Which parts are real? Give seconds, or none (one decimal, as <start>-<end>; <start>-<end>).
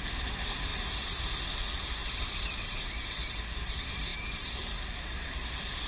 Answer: 0.0-5.9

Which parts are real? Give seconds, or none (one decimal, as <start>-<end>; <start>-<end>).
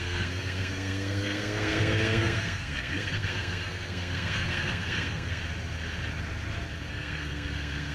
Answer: 5.4-6.9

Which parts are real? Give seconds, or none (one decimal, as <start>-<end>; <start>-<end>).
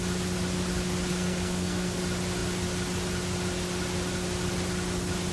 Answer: 0.0-1.1; 2.0-5.3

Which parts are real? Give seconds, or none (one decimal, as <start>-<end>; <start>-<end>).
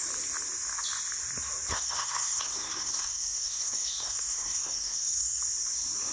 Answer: 0.0-1.7; 5.4-6.1